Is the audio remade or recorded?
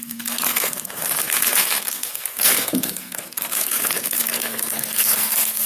remade